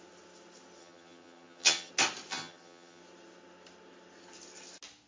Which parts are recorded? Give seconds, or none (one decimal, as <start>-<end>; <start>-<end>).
0.0-0.8; 1.9-2.3; 3.0-5.1